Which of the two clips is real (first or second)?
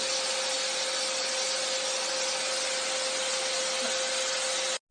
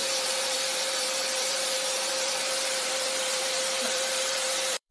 first